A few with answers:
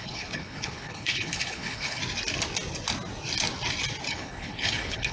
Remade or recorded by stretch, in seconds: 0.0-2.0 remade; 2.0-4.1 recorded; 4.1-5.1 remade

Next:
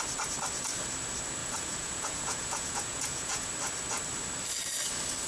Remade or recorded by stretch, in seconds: 0.0-1.4 recorded; 1.4-3.5 remade; 3.5-5.3 recorded

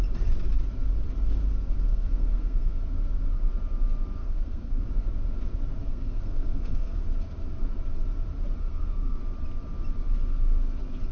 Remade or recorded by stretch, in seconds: 0.0-1.9 recorded; 1.9-2.8 remade; 2.8-4.2 recorded; 4.2-4.9 remade; 4.9-5.8 recorded; 5.8-7.0 remade; 7.0-8.6 recorded; 8.6-9.2 remade; 9.2-11.1 recorded

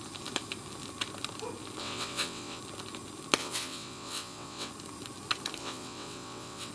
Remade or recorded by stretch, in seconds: 0.0-1.8 recorded; 1.8-2.6 remade; 2.6-3.4 recorded; 3.4-4.7 remade; 4.7-5.6 recorded; 5.6-6.7 remade

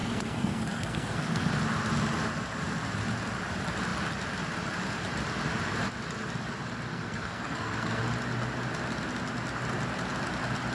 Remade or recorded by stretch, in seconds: 0.0-1.5 remade; 1.5-6.9 recorded; 6.9-8.0 remade; 8.0-10.7 recorded

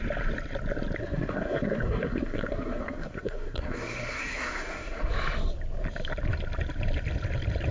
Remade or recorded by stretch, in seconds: 0.0-1.0 recorded; 1.0-5.1 remade; 5.1-7.7 recorded

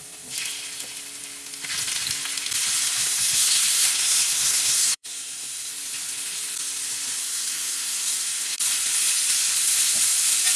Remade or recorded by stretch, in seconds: 0.0-3.0 recorded; 3.0-5.7 remade; 5.7-7.2 recorded; 7.2-8.6 remade; 8.6-10.6 recorded